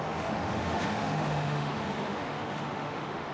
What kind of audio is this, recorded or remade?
remade